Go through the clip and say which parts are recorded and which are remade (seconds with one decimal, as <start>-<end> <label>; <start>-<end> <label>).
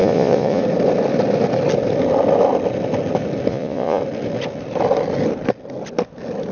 0.0-0.6 remade; 0.6-3.5 recorded; 3.5-4.0 remade; 4.0-6.5 recorded